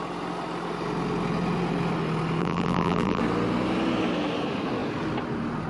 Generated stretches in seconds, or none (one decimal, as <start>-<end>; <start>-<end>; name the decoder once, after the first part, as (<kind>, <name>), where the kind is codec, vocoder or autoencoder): 2.4-3.2 (vocoder, BigVGAN v2)